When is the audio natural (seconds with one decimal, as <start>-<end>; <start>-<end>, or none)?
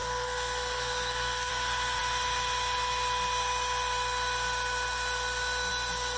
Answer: 1.5-6.2